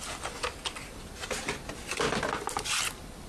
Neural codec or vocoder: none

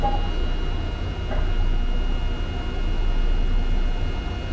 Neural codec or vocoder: none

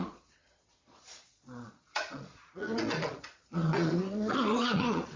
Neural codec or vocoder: vocoder, Vocos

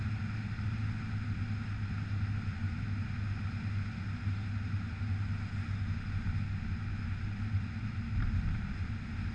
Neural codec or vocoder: none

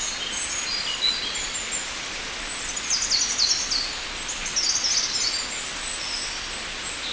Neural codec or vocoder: none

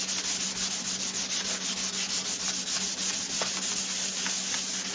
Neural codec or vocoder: none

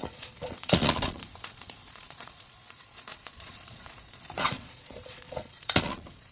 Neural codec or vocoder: vocoder, Vocos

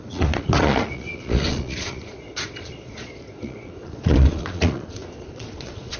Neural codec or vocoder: vocoder, Vocos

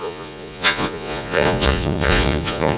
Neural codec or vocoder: vocoder, Vocos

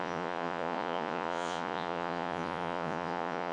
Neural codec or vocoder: vocoder, Vocos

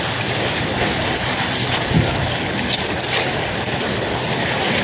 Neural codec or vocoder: none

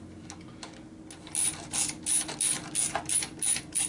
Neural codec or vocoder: none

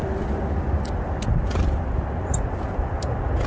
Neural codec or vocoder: none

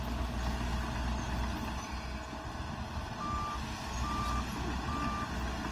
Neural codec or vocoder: none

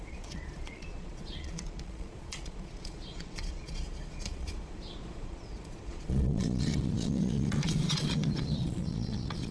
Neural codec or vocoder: vocoder, Vocos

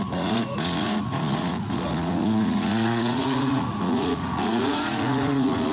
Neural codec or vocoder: vocoder, Vocos